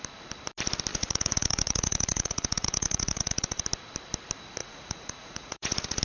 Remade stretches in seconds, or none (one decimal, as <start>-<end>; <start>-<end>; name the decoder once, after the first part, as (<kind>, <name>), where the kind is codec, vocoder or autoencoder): 0.9-3.6 (vocoder, Vocos); 4.6-6.0